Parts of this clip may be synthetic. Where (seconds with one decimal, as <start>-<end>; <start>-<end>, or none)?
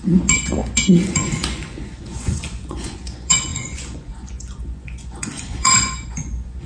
0.0-6.7